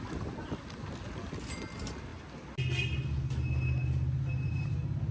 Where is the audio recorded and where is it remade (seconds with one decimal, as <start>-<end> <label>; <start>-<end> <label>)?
0.0-5.1 recorded